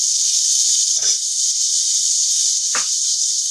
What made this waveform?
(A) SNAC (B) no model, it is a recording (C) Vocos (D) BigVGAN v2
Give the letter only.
D